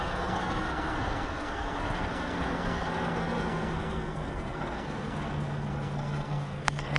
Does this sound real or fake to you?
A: fake